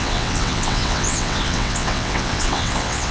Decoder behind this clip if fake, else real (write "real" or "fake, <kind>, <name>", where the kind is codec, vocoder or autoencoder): fake, vocoder, WaveNeXt